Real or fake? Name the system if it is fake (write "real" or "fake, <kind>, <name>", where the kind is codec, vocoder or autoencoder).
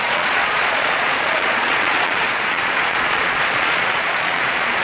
fake, vocoder, Vocos